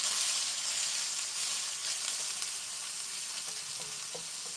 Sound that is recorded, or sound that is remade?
recorded